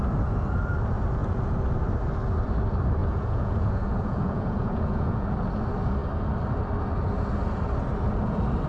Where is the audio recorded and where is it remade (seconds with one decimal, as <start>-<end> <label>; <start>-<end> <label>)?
0.0-3.0 recorded; 3.0-5.3 remade; 5.3-8.7 recorded